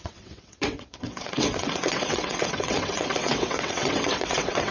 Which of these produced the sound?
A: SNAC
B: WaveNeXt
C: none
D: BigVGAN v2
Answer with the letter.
B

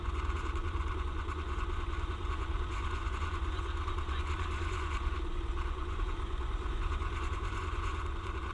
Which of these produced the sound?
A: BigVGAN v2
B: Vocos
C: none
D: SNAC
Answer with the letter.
B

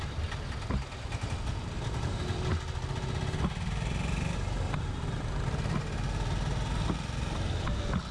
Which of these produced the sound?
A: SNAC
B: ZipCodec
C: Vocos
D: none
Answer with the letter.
D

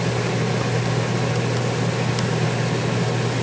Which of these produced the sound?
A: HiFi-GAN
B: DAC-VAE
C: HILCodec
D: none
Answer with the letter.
D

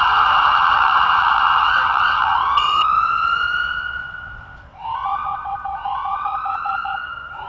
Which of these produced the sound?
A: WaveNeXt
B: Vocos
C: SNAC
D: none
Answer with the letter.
A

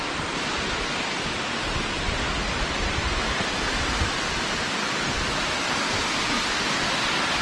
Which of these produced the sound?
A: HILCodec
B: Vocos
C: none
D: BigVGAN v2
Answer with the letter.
C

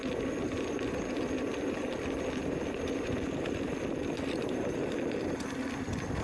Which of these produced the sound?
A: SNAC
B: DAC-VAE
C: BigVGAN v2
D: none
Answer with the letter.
D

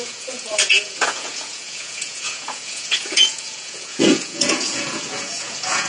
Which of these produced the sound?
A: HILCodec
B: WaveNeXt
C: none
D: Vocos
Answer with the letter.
D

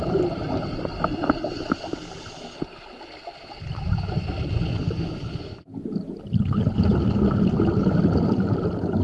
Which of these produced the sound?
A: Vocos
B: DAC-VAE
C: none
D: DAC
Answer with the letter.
C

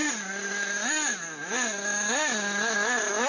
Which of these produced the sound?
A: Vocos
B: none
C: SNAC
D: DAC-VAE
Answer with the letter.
B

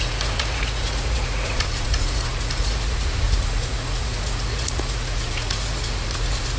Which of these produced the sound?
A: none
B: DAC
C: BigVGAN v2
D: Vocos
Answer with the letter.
D